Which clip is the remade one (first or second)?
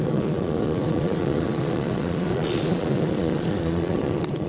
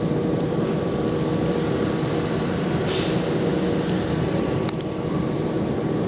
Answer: first